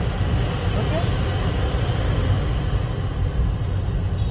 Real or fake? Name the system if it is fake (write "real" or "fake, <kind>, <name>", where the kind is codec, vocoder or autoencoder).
real